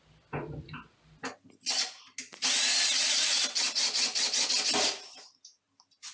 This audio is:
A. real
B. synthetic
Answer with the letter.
A